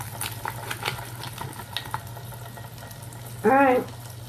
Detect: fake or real real